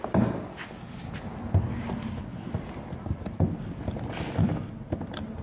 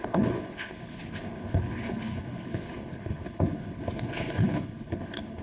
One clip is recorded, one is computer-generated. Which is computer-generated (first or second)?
second